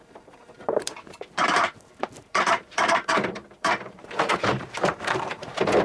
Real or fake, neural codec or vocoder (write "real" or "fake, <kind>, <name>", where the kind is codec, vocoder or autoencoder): fake, vocoder, BigVGAN v2